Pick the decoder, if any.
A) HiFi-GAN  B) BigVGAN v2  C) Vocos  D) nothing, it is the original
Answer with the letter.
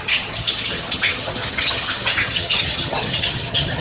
A